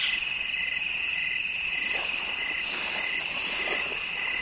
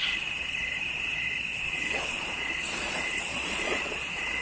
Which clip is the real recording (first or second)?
first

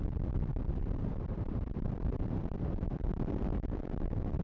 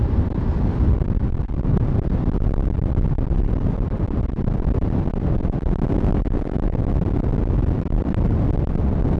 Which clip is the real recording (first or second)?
second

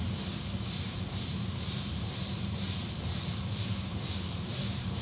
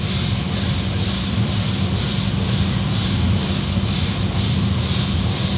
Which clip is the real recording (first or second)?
second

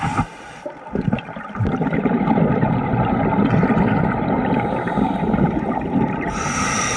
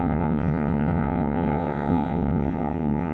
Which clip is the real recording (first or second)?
first